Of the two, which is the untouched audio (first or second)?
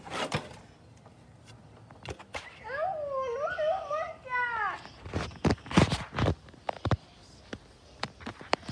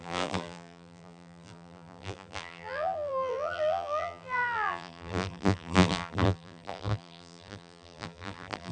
first